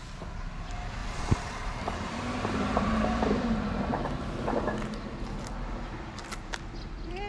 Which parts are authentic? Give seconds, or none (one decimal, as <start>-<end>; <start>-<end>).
0.0-1.0; 3.8-7.3